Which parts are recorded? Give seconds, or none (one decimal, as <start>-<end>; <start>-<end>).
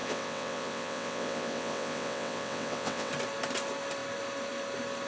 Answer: 3.1-5.1